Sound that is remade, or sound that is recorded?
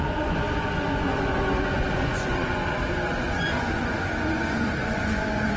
remade